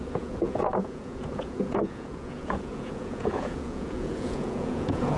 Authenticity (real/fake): fake